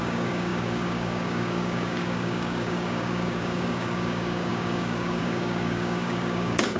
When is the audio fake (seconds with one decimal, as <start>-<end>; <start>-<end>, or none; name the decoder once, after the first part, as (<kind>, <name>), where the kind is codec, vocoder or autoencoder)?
0.0-6.8 (codec, DAC)